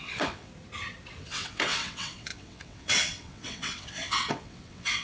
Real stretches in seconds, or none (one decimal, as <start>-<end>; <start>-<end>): 0.5-1.2